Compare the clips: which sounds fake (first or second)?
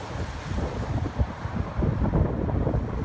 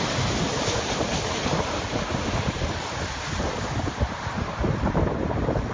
second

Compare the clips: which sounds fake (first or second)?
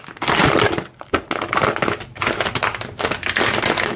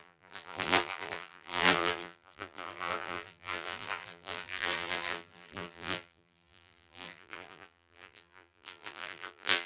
second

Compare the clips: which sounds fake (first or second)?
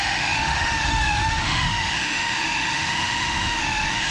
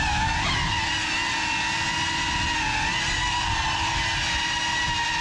first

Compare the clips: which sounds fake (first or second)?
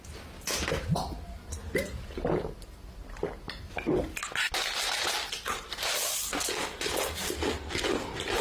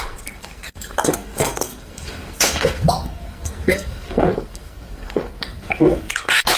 second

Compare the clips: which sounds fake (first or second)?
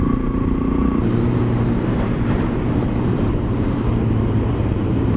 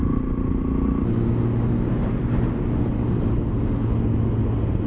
first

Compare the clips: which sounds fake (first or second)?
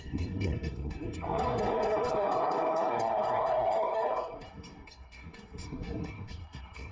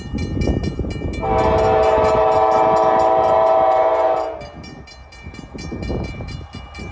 first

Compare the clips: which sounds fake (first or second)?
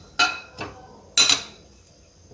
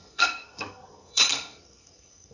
second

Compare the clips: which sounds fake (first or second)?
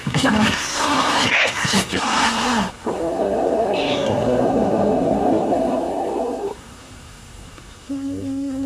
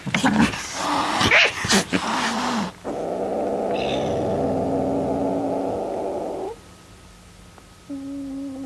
first